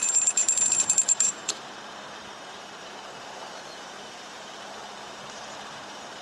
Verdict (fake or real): fake